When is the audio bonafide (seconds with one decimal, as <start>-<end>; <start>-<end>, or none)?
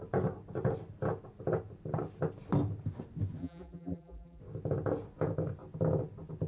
0.0-3.4; 4.4-6.5